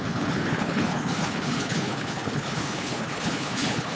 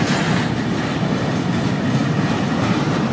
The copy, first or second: first